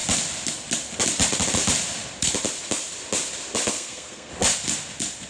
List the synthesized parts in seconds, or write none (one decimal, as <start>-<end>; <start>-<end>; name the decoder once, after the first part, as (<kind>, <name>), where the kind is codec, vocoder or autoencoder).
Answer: 3.7-4.3 (codec, SNAC)